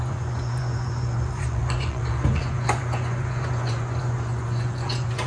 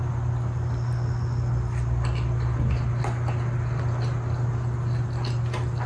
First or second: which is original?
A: second